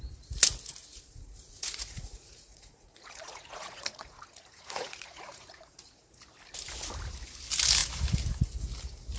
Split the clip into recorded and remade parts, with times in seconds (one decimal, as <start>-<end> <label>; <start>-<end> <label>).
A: 0.0-0.8 recorded; 0.8-6.1 remade; 6.1-9.2 recorded